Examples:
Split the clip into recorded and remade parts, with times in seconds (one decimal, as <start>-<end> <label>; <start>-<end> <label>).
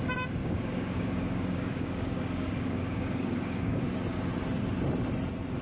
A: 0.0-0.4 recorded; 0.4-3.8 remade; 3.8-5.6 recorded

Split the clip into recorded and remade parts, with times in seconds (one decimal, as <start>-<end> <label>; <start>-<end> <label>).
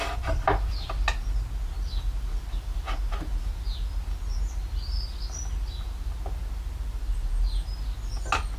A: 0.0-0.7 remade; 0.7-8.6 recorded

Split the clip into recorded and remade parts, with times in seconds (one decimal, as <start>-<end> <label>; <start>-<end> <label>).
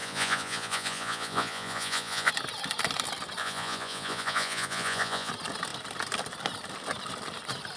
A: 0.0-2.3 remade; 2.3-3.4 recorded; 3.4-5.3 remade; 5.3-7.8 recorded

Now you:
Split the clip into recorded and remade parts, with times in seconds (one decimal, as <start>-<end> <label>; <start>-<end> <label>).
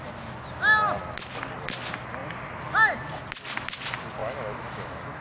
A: 0.0-4.2 recorded; 4.2-5.2 remade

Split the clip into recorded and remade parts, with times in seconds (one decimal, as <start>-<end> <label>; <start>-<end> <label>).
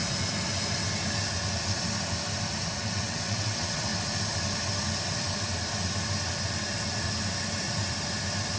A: 0.0-2.8 recorded; 2.8-3.9 remade; 3.9-8.6 recorded